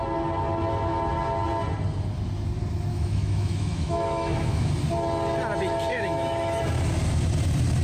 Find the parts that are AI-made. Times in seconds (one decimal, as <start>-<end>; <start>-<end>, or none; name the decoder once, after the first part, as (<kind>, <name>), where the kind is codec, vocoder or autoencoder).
2.9-4.7 (autoencoder, DAC-VAE); 5.9-6.6